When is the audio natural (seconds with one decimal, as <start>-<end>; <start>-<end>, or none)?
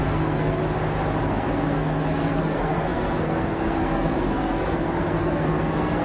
0.6-1.2